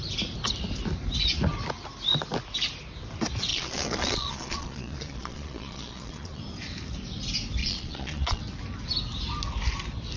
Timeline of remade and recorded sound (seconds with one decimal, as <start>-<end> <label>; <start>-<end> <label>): 0.0-3.5 recorded; 3.5-6.4 remade; 6.4-7.6 recorded; 7.6-8.4 remade; 8.4-10.2 recorded